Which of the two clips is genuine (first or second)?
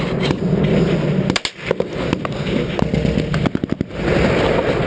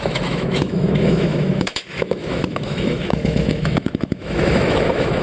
first